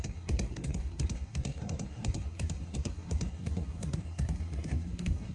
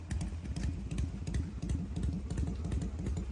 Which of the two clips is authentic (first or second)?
second